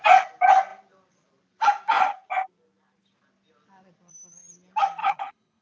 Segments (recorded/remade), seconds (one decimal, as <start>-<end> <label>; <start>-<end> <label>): 0.0-5.0 recorded; 5.0-5.6 remade